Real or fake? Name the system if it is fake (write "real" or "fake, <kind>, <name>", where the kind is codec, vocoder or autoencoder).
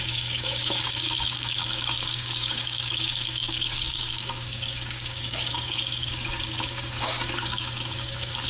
fake, codec, DAC